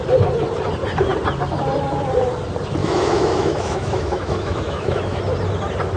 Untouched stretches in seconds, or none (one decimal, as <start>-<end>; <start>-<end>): 0.0-2.8; 5.2-6.0